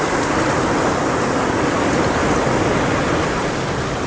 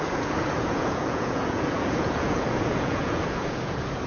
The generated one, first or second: second